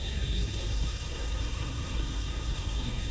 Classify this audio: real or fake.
fake